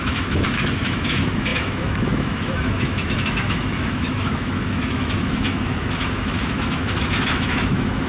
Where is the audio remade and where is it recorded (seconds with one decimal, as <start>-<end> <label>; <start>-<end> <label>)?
0.0-8.1 remade